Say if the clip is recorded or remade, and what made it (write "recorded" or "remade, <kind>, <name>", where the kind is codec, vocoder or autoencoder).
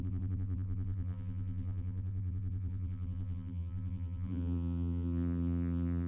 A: remade, vocoder, BigVGAN v2